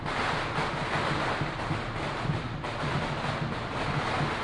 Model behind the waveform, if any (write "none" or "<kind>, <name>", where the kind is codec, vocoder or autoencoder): none